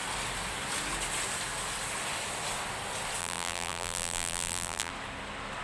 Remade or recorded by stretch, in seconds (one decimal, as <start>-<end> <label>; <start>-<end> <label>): 0.0-3.2 recorded; 3.2-4.9 remade; 4.9-5.6 recorded